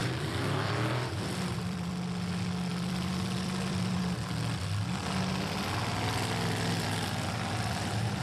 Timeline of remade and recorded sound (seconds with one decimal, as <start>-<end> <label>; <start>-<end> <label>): 0.0-1.9 remade; 1.9-2.7 recorded; 2.7-4.0 remade; 4.0-8.2 recorded